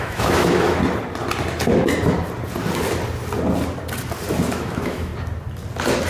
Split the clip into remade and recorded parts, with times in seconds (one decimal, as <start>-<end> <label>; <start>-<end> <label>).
0.0-0.8 remade; 0.8-4.5 recorded; 4.5-5.1 remade; 5.1-6.1 recorded